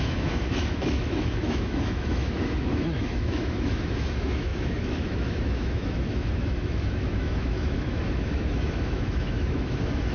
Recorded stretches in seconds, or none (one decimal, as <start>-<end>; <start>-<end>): none